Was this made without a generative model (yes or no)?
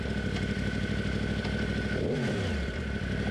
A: yes